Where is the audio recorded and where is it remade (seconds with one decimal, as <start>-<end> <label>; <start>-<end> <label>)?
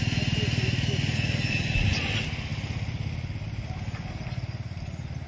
0.0-5.3 recorded